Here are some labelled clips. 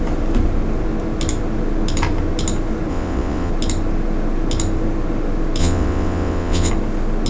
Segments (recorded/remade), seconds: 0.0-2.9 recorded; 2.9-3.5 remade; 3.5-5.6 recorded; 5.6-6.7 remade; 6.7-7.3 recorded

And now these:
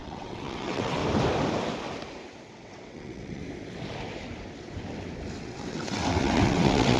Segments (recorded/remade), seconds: 0.0-1.0 remade; 1.0-2.5 recorded; 2.5-3.4 remade; 3.4-5.4 recorded; 5.4-7.0 remade